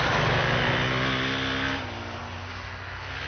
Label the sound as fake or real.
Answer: real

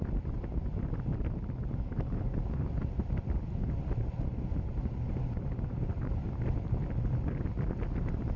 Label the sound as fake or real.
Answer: real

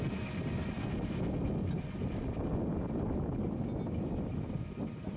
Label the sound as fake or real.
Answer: real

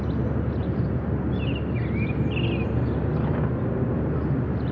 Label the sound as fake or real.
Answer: real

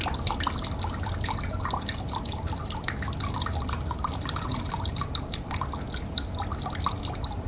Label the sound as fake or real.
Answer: real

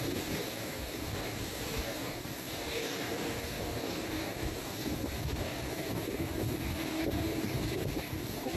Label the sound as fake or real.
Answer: fake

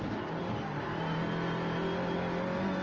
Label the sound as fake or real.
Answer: real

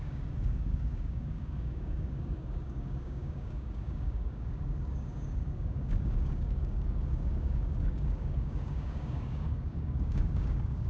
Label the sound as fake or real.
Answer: fake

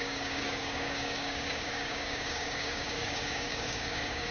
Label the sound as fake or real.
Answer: fake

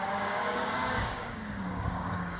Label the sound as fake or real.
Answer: fake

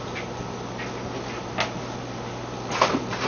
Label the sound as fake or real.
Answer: real